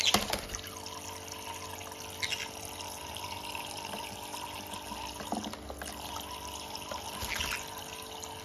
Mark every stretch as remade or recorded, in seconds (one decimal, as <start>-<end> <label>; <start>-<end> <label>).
0.0-8.4 recorded